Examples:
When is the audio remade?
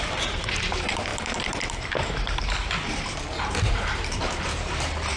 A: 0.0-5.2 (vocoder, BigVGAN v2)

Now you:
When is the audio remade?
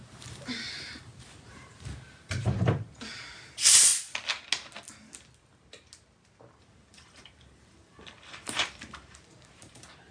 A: 0.0-3.9 (vocoder, BigVGAN v2); 6.6-10.1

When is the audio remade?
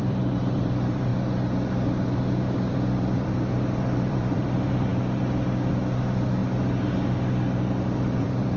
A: 0.0-1.1 (vocoder, BigVGAN v2); 2.4-4.9; 5.7-6.4; 8.2-8.6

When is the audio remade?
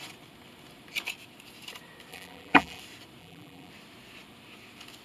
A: 2.1-2.8 (vocoder, BigVGAN v2); 3.2-3.7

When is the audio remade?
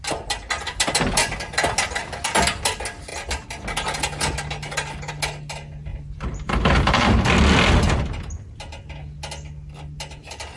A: 5.9-7.2 (vocoder, BigVGAN v2)